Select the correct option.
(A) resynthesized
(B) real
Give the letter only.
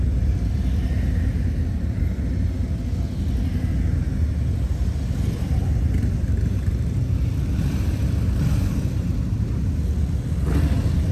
B